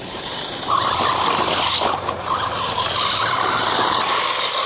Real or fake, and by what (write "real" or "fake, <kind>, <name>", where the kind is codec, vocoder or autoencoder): fake, vocoder, BigVGAN v2